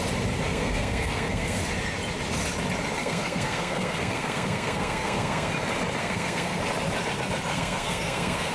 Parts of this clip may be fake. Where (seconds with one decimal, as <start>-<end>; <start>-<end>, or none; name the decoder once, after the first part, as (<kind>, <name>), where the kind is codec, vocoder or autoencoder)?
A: 0.5-1.6 (codec, SNAC); 3.0-5.5; 6.0-6.6; 7.5-8.5